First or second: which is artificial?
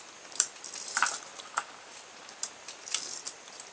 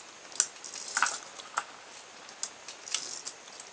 first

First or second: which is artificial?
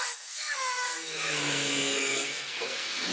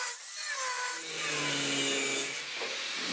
first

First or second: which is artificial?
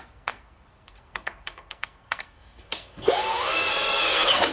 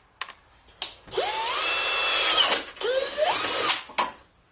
first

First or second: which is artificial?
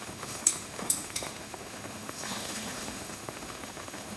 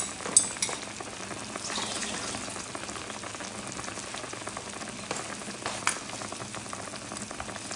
first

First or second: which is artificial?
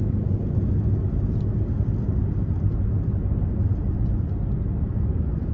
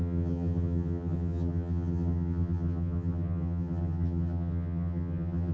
second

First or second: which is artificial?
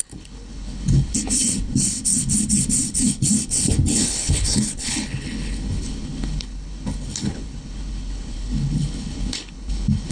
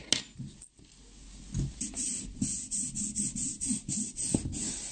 first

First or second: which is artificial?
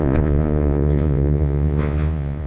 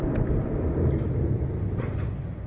first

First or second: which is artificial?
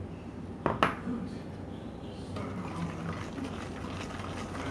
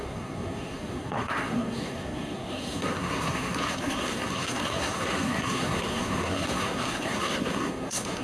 second